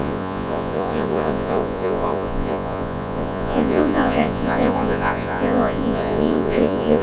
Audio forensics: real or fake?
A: fake